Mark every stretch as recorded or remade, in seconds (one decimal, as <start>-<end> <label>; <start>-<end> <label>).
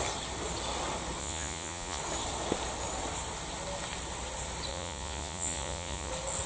0.0-1.2 recorded; 1.2-2.0 remade; 2.0-4.7 recorded; 4.7-6.1 remade; 6.1-6.5 recorded